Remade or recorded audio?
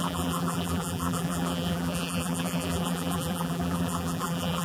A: remade